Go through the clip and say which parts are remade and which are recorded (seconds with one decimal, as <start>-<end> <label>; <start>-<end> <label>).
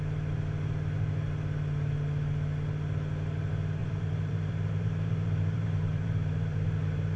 0.0-3.8 recorded; 3.8-7.2 remade